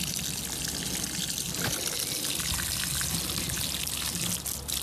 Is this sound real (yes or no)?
yes